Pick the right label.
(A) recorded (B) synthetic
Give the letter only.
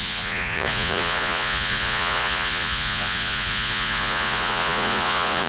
B